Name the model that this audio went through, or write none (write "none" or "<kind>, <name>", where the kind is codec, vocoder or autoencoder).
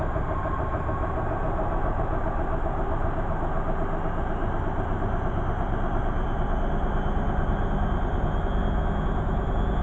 none